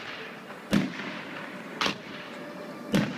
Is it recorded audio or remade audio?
recorded